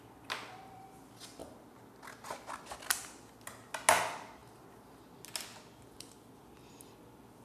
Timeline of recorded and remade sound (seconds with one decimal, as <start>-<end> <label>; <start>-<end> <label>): 0.0-7.4 recorded

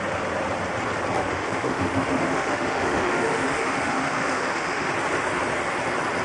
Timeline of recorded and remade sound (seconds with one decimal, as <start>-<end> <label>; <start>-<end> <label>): 0.0-1.2 recorded; 1.2-4.9 remade; 4.9-6.2 recorded

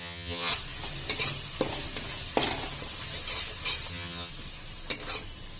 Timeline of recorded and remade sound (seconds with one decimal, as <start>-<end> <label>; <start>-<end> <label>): 0.0-0.5 remade; 0.5-3.9 recorded; 3.9-4.3 remade; 4.3-5.6 recorded

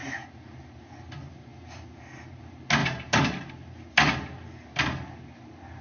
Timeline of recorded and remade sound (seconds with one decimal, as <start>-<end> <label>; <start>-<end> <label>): 0.0-0.8 remade; 0.8-1.5 recorded; 1.5-2.4 remade; 2.4-2.8 recorded; 2.8-3.5 remade; 3.5-5.8 recorded

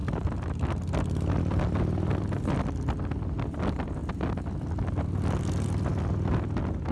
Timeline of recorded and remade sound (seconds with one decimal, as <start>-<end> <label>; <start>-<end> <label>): 0.0-6.9 recorded